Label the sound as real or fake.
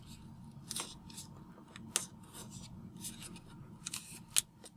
real